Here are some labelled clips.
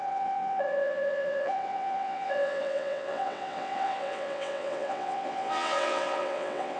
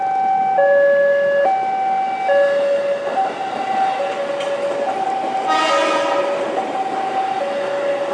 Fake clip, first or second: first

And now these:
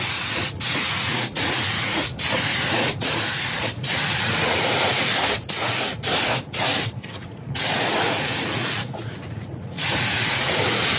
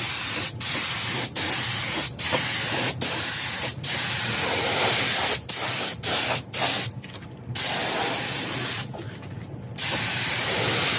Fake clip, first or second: first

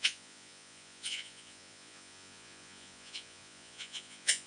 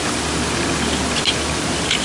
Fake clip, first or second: first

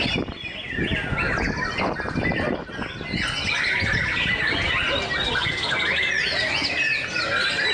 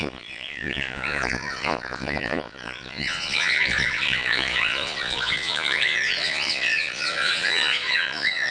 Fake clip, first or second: second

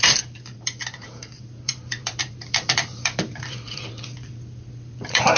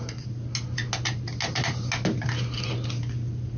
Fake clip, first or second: first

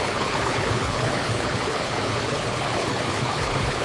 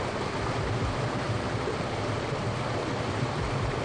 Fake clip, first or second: first